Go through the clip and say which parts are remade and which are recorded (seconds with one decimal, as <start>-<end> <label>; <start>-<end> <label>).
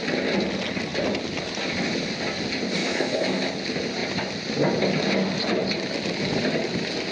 0.0-2.8 recorded; 2.8-3.5 remade; 3.5-7.1 recorded